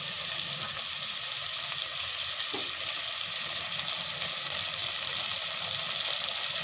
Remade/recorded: recorded